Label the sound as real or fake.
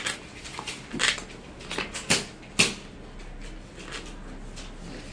real